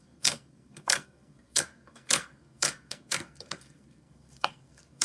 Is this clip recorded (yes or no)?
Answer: no